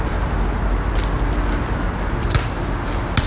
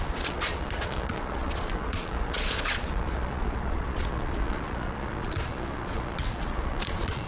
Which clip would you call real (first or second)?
first